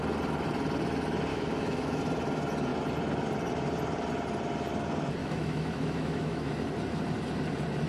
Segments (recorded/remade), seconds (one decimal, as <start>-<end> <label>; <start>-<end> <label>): 0.0-1.3 recorded; 1.3-2.0 remade; 2.0-5.2 recorded; 5.2-6.5 remade; 6.5-7.9 recorded